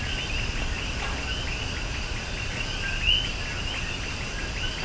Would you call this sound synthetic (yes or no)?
no